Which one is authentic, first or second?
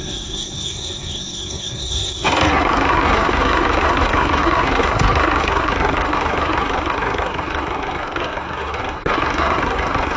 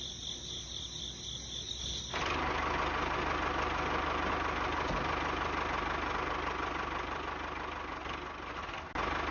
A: second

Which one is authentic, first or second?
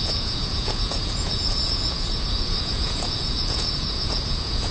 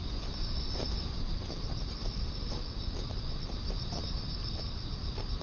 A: second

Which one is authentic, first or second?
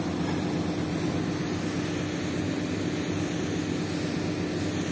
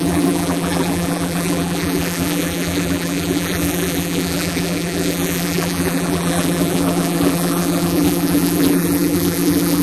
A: first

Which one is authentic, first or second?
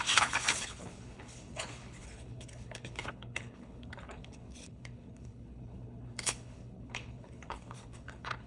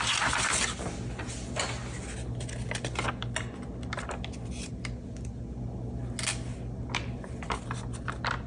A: second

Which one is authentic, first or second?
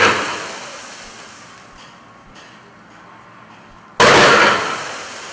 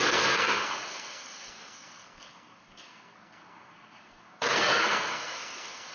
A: first